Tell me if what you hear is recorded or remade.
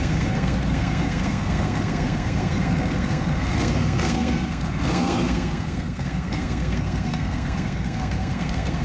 remade